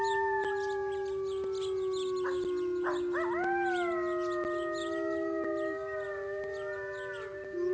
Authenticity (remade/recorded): recorded